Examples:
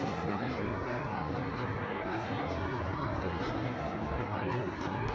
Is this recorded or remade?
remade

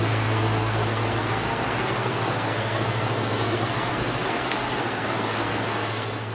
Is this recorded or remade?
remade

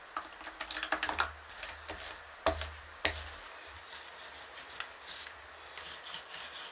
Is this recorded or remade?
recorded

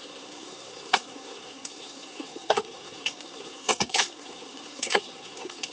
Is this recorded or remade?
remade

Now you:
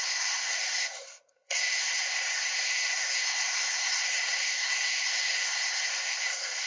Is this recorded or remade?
remade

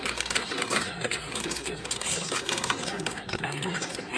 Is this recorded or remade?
remade